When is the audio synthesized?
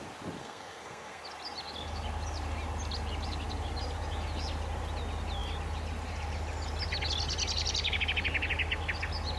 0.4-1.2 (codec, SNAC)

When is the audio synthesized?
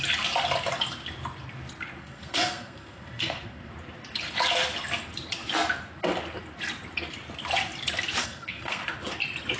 2.0-3.7 (codec, SNAC); 8.2-8.8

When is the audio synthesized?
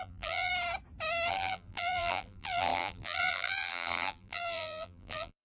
0.0-0.5 (vocoder, BigVGAN v2); 1.3-5.4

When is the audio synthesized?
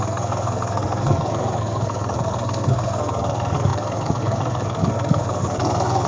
0.0-6.1 (codec, SNAC)